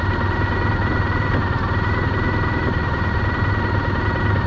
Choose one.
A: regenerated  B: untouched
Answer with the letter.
B